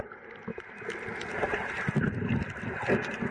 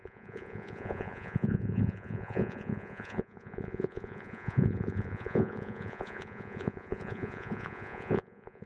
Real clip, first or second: first